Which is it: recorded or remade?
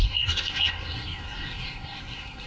remade